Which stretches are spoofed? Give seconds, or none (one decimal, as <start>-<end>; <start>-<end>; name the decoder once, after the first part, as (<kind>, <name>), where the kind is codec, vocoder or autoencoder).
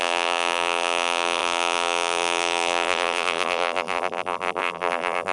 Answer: 0.0-5.3 (vocoder, BigVGAN v2)